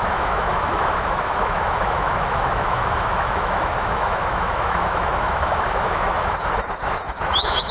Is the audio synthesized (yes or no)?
yes